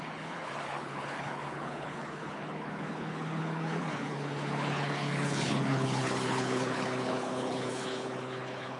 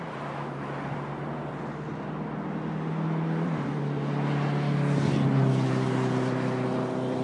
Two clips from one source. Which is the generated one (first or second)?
first